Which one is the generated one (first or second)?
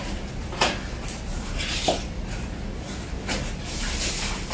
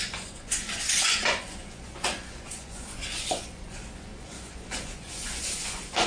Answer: second